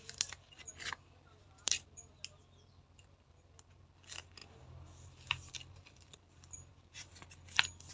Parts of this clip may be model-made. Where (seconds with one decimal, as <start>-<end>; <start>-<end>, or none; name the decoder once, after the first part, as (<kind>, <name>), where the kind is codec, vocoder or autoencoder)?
1.4-2.2 (vocoder, BigVGAN v2); 6.7-7.2